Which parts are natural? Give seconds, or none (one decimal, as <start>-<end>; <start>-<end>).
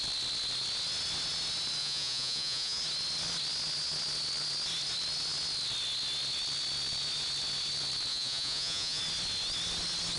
0.0-1.8; 2.8-8.1; 9.0-10.2